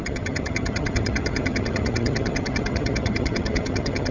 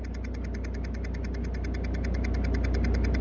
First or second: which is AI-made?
first